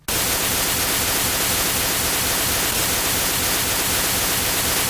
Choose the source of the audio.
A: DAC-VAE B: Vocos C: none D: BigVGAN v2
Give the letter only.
C